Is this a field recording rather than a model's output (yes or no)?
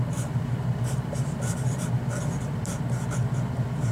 no